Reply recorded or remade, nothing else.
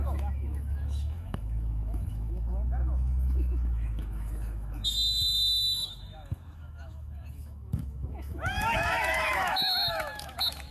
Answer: remade